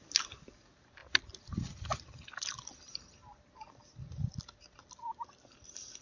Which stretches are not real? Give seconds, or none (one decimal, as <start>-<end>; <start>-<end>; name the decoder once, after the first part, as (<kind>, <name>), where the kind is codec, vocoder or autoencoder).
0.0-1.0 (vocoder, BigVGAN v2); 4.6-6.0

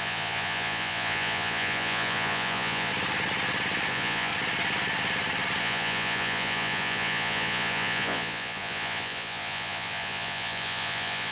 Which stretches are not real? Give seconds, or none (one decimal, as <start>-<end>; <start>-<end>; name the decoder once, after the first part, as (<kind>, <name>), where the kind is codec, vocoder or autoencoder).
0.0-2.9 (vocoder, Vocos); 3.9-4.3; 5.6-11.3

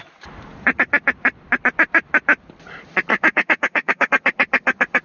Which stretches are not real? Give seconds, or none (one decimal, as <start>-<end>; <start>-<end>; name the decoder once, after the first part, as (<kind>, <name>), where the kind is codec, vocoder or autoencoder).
3.1-4.1 (codec, DAC)